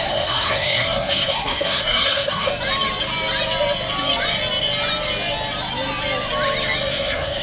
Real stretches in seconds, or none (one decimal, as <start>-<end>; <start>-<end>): 2.5-6.9